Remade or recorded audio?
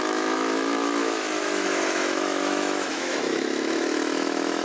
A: remade